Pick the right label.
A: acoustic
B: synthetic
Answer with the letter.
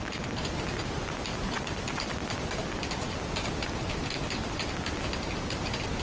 A